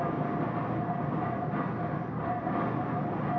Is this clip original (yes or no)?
yes